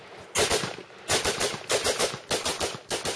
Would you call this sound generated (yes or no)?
no